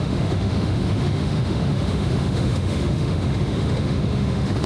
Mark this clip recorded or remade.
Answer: remade